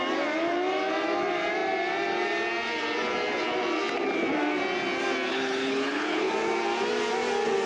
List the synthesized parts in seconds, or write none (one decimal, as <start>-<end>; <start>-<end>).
5.3-6.3